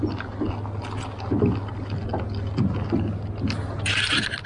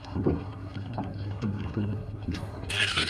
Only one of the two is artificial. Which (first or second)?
second